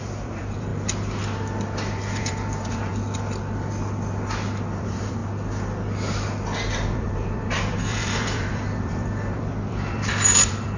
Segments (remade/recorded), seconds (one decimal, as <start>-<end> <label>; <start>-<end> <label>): 0.0-0.7 remade; 0.7-2.2 recorded; 2.2-2.9 remade; 2.9-4.8 recorded; 4.8-5.2 remade; 5.2-6.7 recorded; 6.7-10.8 remade